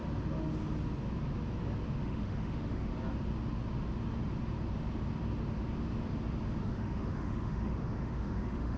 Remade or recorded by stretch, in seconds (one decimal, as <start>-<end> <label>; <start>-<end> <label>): 0.0-2.0 recorded; 2.0-2.9 remade; 2.9-6.6 recorded; 6.6-8.8 remade